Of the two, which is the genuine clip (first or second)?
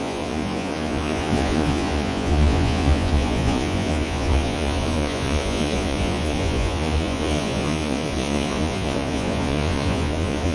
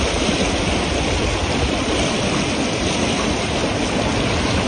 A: second